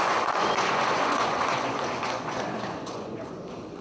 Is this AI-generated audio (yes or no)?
yes